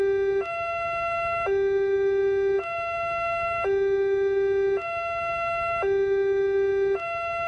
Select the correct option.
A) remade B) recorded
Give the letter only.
B